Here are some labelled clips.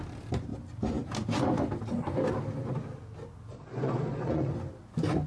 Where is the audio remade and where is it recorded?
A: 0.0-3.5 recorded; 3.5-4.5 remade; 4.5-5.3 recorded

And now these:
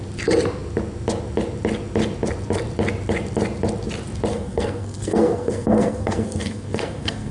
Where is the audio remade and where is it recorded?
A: 0.0-4.3 recorded; 4.3-7.3 remade

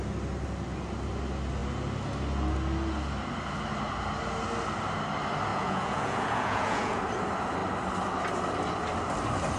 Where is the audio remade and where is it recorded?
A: 0.0-5.5 recorded; 5.5-7.0 remade; 7.0-9.6 recorded